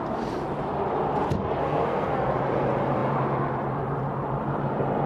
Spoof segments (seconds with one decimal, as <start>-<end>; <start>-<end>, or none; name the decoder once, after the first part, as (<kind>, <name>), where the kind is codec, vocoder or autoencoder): 1.6-2.3 (codec, SNAC)